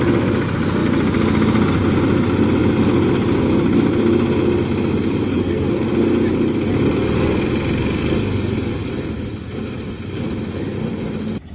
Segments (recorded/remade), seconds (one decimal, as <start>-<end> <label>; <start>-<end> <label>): 0.0-5.3 recorded; 5.3-5.8 remade; 5.8-11.5 recorded